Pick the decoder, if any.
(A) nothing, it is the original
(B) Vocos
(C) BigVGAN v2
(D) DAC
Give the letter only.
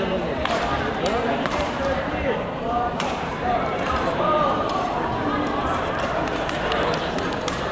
C